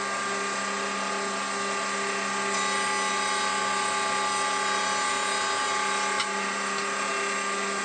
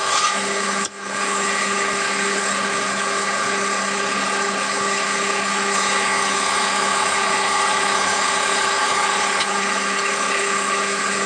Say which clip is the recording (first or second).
first